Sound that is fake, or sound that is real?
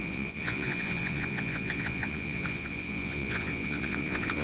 fake